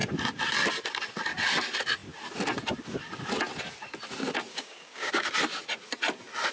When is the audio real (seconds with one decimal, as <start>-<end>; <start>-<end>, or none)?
0.0-4.5; 5.1-6.5